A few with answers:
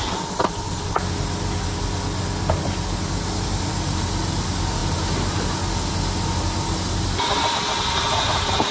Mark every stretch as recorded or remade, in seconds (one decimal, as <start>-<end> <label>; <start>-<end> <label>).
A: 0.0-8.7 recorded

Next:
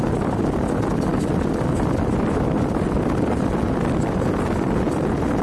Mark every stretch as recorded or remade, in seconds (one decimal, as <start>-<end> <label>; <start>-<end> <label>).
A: 0.0-5.4 recorded

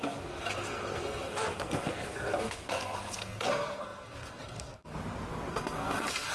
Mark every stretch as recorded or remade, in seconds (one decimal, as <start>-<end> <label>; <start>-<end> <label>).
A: 0.0-4.9 remade; 4.9-5.5 recorded; 5.5-6.3 remade

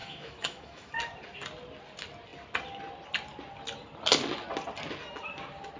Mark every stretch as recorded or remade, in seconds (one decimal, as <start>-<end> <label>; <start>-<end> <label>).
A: 0.0-1.0 remade; 1.0-5.8 recorded

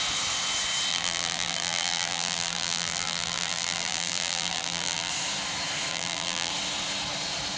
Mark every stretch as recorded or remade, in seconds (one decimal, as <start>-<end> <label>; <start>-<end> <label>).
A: 0.0-0.9 recorded; 0.9-5.1 remade; 5.1-5.9 recorded; 5.9-6.5 remade; 6.5-7.6 recorded